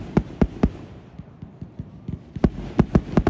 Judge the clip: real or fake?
real